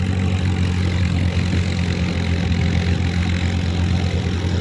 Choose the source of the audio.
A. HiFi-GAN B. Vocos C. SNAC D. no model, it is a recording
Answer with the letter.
D